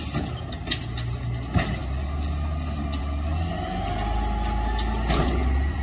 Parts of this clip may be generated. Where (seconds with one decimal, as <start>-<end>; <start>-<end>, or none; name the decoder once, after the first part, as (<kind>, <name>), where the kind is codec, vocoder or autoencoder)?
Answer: none